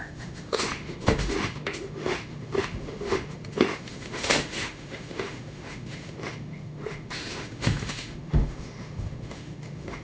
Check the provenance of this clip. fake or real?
fake